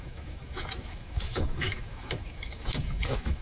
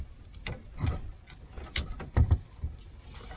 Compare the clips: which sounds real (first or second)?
second